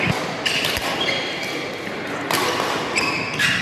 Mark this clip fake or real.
real